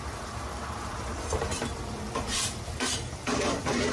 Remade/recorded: remade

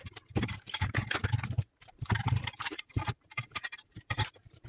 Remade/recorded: remade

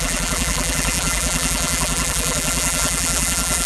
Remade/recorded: remade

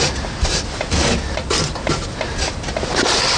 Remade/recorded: recorded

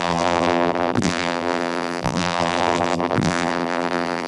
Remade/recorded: remade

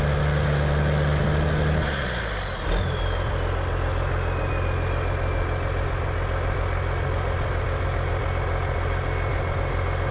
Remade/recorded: recorded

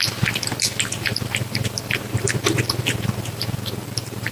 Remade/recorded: remade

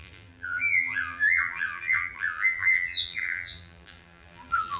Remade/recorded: remade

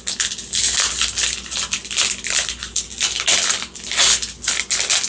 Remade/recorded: recorded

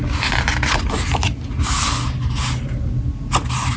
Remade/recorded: recorded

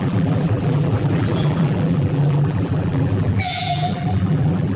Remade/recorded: remade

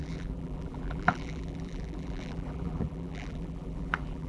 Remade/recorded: remade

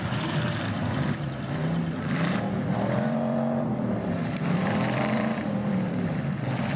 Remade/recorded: remade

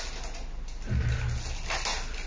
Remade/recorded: recorded